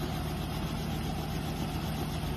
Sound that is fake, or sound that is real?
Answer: real